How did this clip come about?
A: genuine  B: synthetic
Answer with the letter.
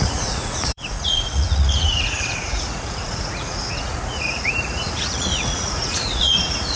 B